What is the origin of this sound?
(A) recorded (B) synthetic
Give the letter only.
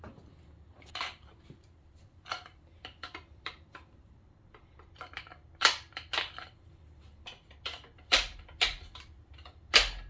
A